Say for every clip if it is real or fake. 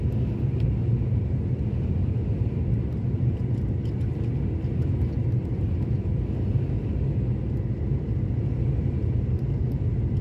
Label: real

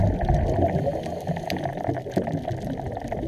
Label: real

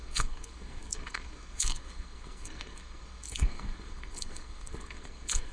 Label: fake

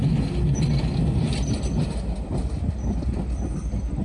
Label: real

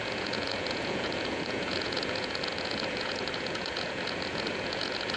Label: fake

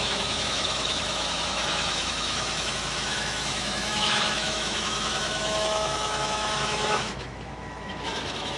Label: fake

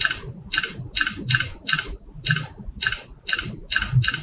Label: real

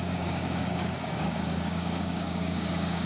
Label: fake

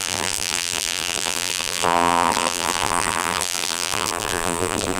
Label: fake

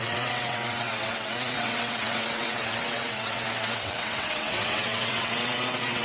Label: fake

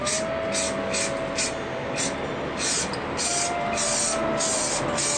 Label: real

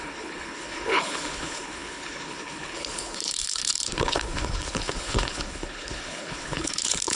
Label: fake